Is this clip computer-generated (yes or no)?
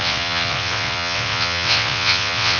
yes